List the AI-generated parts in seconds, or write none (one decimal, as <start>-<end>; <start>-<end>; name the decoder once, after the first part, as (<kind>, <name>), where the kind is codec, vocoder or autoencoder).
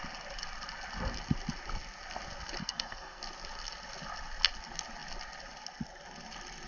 2.6-3.2 (codec, SNAC)